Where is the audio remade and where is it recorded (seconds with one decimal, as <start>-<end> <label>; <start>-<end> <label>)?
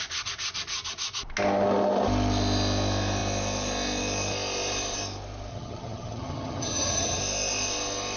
0.0-5.5 recorded; 5.5-7.2 remade; 7.2-8.2 recorded